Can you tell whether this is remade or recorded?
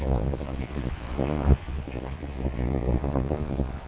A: remade